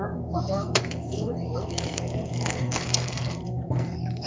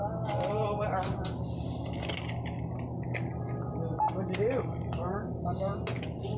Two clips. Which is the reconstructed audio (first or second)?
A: first